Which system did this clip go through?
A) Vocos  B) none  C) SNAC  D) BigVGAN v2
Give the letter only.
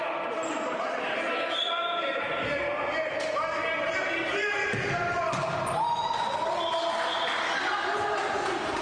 B